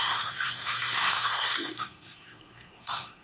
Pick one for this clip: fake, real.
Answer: fake